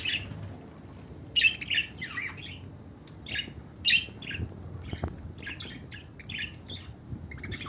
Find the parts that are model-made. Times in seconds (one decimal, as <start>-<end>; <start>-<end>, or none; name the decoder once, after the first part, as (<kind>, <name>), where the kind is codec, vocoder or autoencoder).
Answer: none